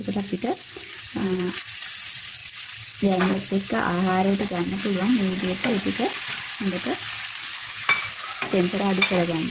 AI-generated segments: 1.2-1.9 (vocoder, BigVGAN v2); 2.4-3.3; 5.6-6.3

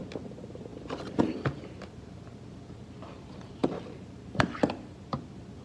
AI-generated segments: 0.0-5.6 (vocoder, BigVGAN v2)

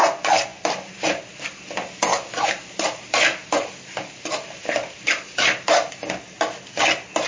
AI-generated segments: 0.5-1.5 (vocoder, BigVGAN v2); 2.1-5.9